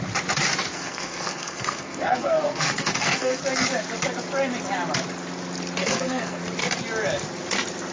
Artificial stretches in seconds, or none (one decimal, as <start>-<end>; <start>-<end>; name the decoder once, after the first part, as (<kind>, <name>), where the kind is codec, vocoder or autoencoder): 0.7-3.4 (codec, SNAC); 5.8-6.4